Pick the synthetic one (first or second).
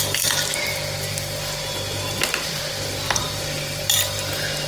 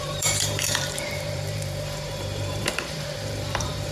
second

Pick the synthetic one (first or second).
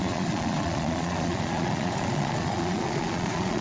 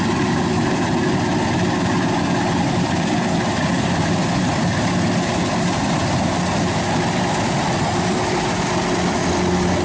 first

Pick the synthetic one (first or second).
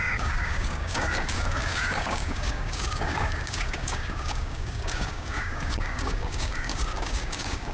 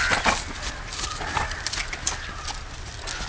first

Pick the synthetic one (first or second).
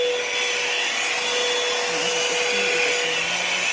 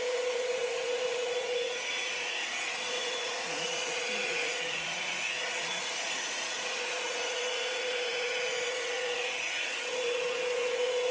second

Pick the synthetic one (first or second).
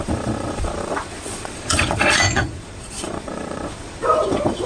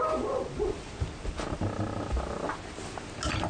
first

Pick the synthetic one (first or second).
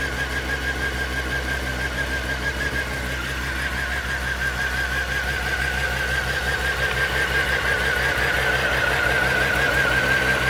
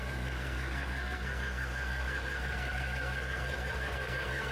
second